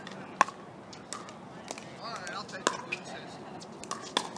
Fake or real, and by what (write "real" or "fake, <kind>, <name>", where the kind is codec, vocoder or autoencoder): real